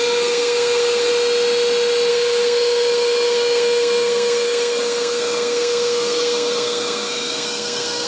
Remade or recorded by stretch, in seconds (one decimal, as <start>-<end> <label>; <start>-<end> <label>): 0.0-1.1 remade; 1.1-2.1 recorded; 2.1-8.1 remade